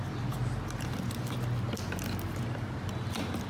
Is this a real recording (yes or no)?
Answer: yes